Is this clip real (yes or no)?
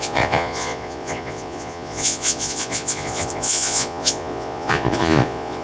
no